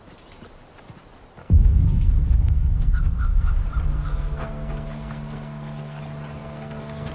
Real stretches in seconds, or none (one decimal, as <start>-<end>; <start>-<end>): 0.0-1.4; 3.5-3.9; 6.0-6.4